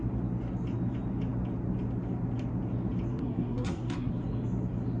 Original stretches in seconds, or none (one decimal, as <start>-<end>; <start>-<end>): 0.0-3.1; 4.1-5.0